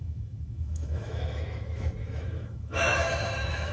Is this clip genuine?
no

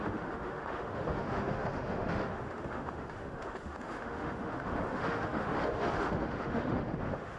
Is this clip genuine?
no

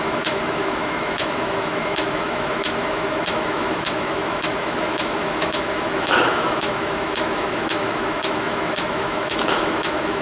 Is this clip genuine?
no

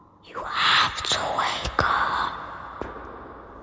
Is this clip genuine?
yes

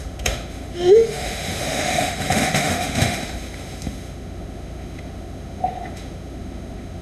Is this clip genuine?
no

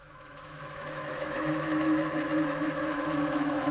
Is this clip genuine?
no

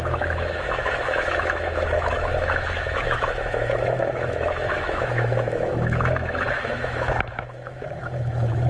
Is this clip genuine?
no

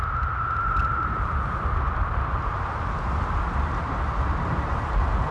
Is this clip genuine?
yes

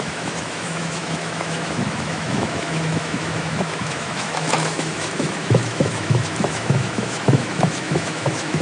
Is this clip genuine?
no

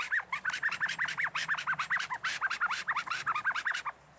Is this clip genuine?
yes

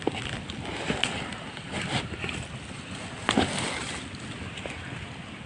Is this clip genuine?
yes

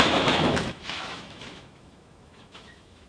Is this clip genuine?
no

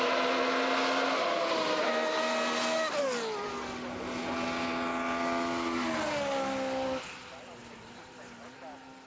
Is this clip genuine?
yes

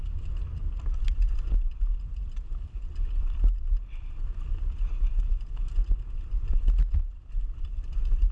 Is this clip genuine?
yes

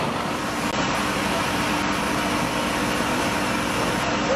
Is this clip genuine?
yes